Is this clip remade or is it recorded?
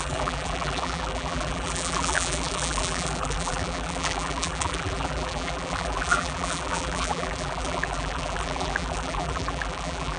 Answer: remade